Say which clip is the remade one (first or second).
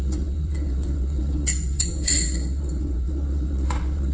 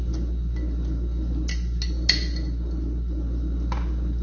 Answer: first